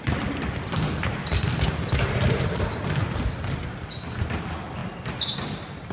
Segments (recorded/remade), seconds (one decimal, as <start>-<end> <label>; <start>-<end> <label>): 0.0-5.9 recorded